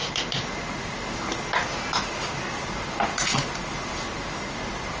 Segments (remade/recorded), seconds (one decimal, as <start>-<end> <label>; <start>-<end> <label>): 0.0-5.0 recorded